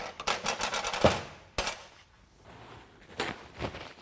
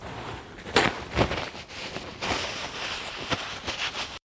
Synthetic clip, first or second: second